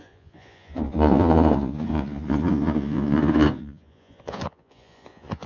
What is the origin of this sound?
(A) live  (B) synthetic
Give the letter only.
B